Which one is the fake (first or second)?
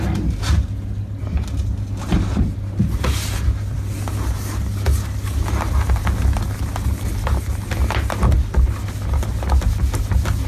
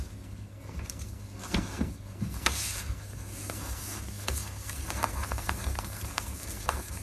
second